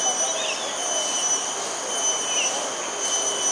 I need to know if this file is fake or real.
real